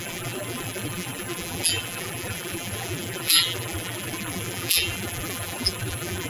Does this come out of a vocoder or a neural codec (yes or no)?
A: yes